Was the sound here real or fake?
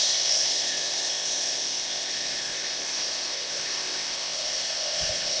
fake